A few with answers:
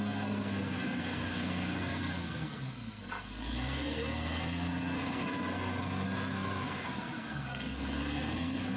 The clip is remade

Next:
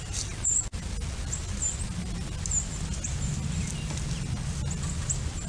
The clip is recorded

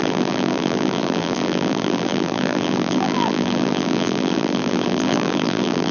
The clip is remade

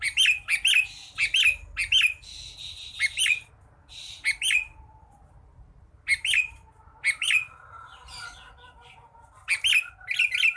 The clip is recorded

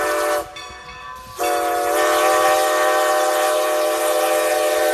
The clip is recorded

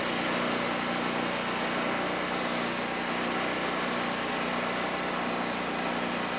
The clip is recorded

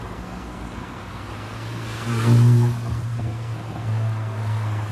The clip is remade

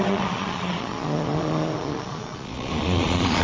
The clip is remade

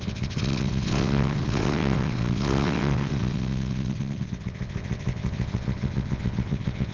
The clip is remade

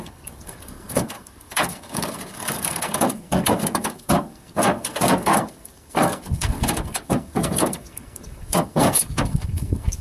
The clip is remade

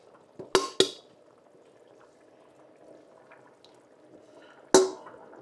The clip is recorded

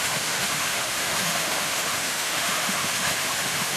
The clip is remade